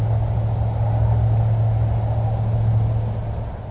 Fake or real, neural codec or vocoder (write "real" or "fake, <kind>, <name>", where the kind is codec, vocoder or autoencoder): real